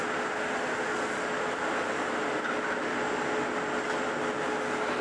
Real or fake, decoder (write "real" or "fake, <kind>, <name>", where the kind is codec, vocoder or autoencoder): real